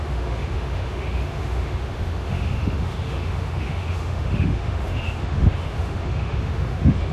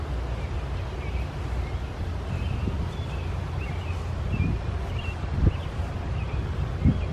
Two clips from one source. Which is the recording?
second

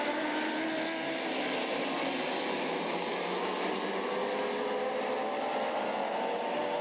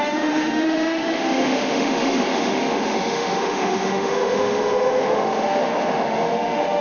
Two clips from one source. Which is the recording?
first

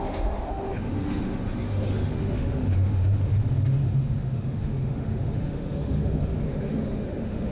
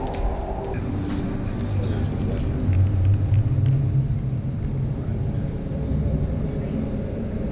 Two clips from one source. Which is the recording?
second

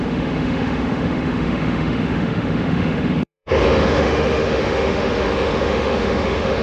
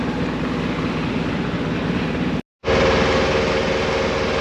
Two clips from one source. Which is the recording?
second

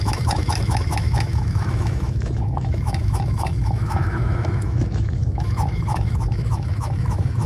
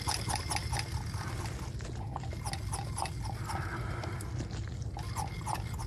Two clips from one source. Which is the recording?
second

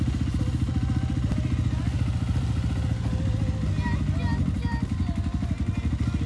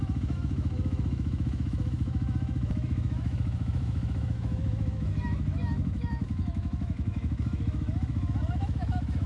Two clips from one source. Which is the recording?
first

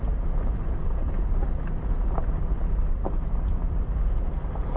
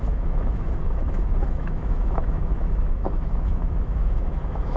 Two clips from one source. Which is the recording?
first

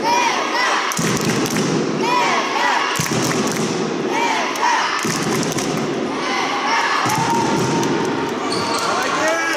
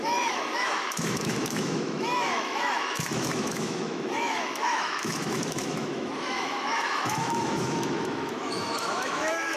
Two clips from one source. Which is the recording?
first